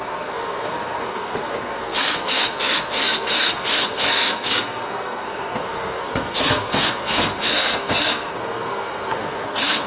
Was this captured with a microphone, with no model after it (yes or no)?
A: no